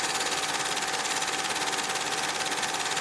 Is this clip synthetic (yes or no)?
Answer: no